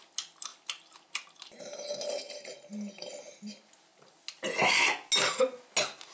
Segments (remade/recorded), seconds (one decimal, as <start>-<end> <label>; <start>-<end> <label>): 0.0-6.1 recorded